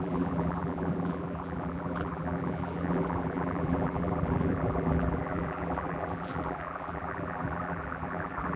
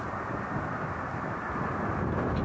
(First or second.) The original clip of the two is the second